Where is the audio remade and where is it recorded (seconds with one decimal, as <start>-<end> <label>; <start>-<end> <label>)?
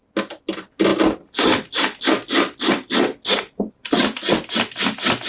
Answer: 0.0-5.3 recorded